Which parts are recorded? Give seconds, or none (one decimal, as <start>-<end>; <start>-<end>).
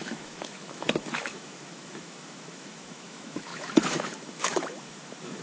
none